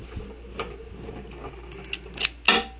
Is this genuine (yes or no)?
yes